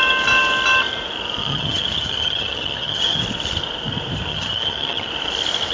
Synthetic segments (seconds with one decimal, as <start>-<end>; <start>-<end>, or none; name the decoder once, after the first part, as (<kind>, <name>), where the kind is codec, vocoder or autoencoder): 1.4-3.2 (vocoder, HiFi-GAN); 4.3-5.1